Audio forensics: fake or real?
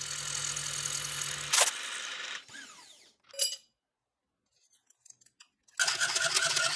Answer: real